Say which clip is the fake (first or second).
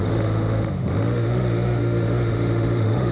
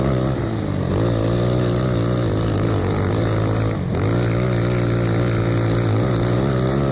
first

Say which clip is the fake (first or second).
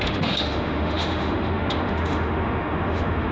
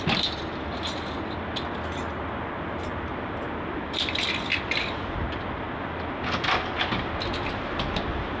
first